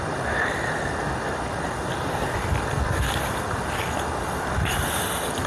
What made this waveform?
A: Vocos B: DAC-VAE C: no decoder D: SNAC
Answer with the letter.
C